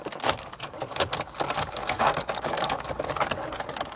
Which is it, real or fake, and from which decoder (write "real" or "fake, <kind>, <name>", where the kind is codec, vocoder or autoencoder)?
fake, codec, DAC